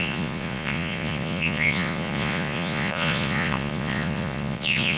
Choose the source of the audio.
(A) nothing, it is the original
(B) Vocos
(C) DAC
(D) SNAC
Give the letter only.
B